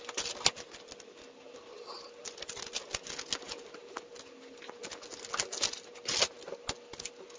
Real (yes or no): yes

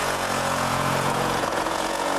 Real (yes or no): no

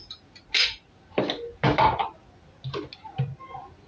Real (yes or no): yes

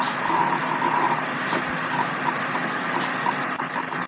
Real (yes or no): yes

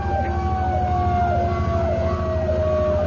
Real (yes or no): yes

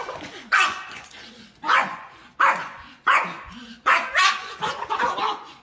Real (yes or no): no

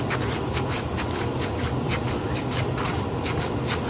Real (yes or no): yes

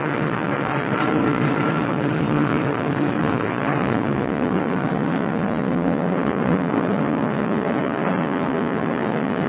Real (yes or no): no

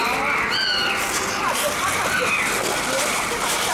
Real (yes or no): yes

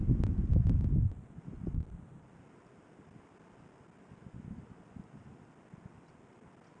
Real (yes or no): yes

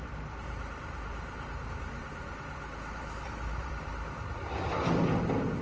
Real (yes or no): yes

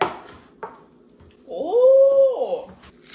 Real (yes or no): yes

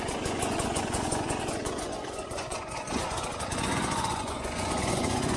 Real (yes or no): no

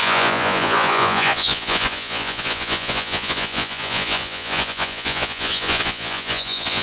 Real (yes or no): no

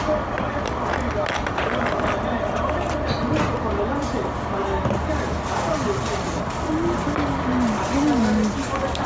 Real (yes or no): yes